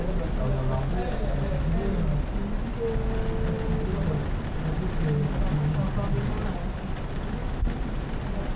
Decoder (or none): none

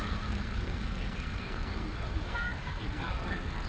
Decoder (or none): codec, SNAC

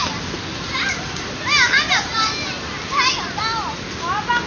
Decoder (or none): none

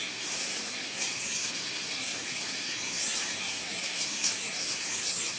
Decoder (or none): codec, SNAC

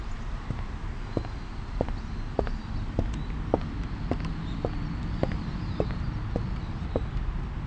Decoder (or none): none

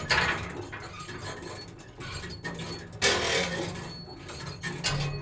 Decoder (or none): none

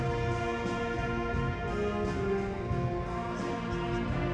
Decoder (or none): none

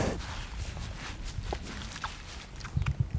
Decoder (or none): none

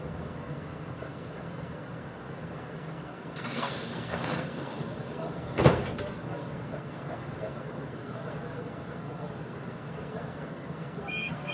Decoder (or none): codec, SNAC